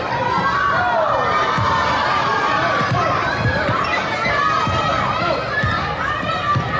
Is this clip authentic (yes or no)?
yes